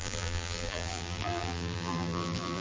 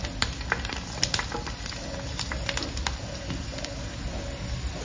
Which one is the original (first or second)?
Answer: second